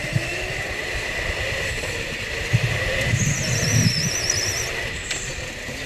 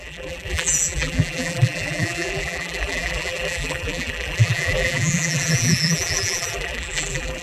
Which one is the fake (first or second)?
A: second